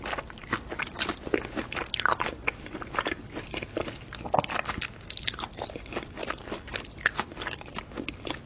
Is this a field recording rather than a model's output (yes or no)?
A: yes